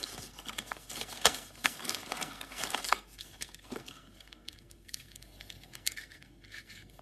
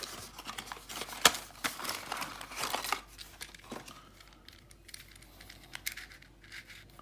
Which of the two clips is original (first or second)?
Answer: second